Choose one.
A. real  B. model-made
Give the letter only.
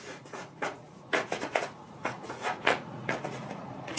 B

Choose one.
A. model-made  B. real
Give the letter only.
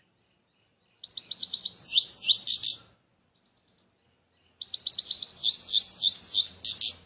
B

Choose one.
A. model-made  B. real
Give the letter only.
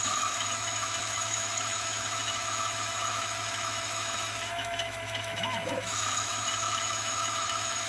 A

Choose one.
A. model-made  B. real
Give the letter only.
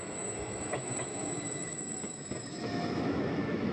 A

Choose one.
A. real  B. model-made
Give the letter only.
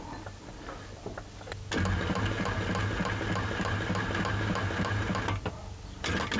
A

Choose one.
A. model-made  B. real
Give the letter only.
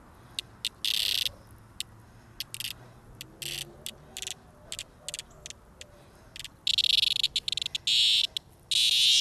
B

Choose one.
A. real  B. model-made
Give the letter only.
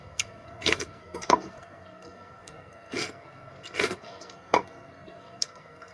B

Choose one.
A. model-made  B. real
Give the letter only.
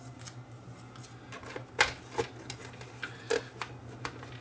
B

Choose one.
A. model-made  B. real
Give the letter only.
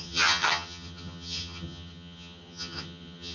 A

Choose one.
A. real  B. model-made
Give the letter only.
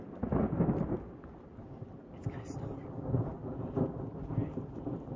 A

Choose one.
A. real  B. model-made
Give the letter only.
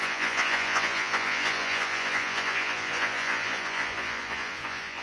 B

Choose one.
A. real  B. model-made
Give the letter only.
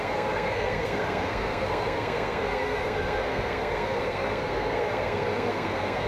B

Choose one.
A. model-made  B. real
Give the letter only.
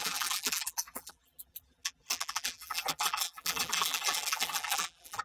A